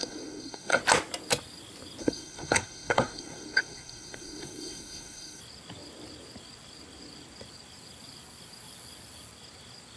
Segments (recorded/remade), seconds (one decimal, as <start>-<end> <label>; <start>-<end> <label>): 0.0-0.8 remade; 0.8-2.0 recorded; 2.0-5.4 remade; 5.4-10.0 recorded